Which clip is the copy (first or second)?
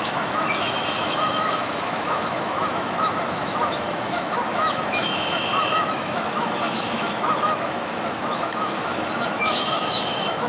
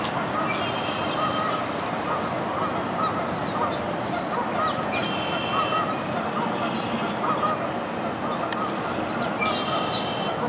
first